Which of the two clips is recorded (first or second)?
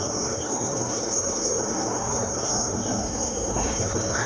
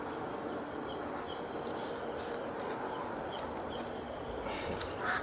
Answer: second